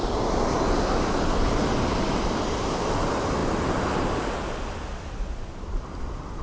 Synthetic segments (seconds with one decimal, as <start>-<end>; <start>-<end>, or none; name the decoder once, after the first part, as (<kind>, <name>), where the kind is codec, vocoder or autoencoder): 0.0-0.8 (vocoder, BigVGAN v2)